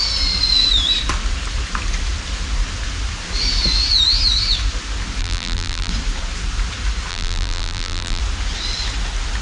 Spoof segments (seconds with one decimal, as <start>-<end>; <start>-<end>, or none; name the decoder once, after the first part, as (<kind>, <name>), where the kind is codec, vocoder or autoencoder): 5.2-5.9 (vocoder, BigVGAN v2); 7.1-8.2

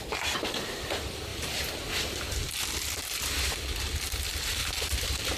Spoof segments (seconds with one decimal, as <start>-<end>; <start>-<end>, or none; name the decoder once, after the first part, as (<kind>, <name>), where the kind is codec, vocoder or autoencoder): 1.3-1.9 (vocoder, BigVGAN v2); 4.6-5.4

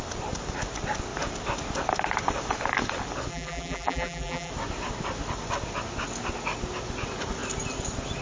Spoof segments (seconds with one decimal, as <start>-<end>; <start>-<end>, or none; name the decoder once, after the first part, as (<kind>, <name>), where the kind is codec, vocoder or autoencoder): 3.3-4.5 (vocoder, BigVGAN v2)

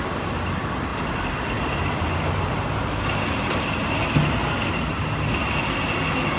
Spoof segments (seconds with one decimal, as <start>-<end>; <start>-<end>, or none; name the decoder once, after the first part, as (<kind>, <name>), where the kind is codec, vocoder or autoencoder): none

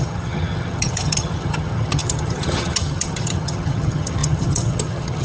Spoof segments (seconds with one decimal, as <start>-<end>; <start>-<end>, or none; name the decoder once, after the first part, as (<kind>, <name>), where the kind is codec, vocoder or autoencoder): 0.0-5.2 (vocoder, HiFi-GAN)

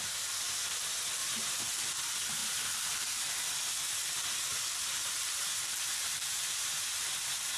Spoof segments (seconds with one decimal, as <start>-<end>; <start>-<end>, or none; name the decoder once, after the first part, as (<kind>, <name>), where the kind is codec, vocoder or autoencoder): 1.2-1.9 (vocoder, BigVGAN v2); 2.4-3.4; 4.5-6.8